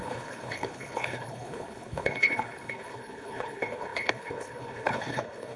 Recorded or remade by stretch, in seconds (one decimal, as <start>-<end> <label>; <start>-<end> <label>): 0.0-5.6 remade